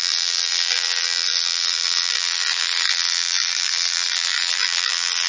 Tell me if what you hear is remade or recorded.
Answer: remade